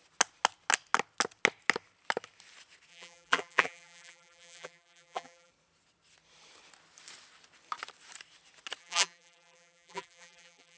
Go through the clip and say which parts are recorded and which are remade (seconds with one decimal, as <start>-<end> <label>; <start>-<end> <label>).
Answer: 0.0-2.9 recorded; 2.9-5.5 remade; 5.5-8.8 recorded; 8.8-10.8 remade